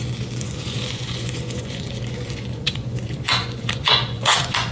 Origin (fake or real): fake